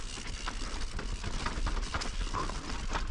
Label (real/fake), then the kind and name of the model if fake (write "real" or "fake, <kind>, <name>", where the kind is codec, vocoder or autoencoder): real